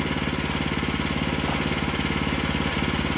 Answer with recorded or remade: recorded